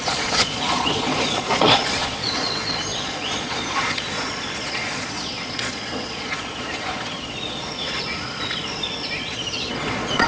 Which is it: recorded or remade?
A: remade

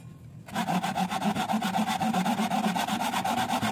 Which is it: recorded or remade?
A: recorded